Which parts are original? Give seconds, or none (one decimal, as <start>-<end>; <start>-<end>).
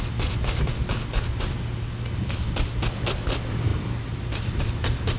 0.0-5.2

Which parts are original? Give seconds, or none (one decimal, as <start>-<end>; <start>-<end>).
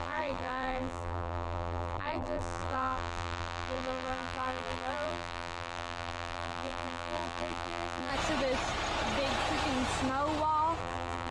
8.1-10.8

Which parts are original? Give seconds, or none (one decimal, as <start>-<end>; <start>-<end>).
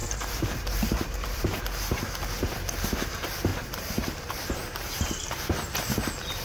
1.6-3.5; 5.4-6.4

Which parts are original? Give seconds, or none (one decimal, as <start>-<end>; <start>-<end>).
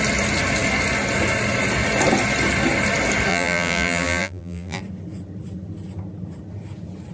0.0-3.3; 4.8-7.1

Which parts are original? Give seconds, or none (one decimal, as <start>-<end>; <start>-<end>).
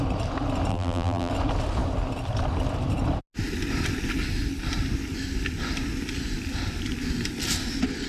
0.0-0.7; 1.3-8.1